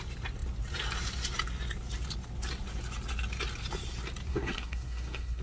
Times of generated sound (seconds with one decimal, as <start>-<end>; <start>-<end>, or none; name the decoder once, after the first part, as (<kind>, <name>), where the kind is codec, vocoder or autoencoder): 4.3-5.4 (codec, SNAC)